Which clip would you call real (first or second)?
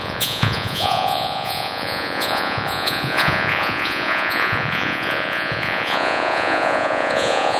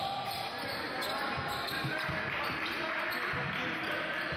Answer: second